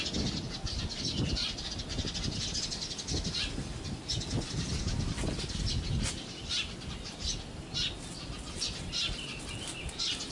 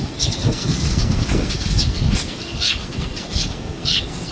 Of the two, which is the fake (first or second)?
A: second